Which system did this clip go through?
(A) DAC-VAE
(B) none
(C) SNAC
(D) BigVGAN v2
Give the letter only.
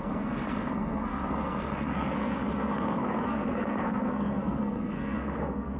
C